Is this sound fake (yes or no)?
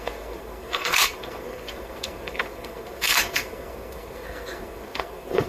yes